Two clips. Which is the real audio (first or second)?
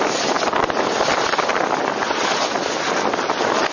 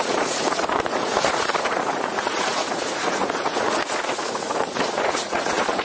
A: first